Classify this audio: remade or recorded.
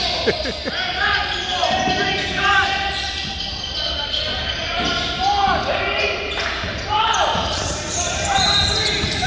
recorded